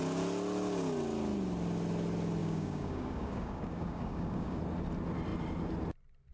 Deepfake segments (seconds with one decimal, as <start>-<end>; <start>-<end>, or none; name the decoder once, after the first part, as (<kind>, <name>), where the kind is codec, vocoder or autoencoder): 2.4-4.6 (codec, DAC)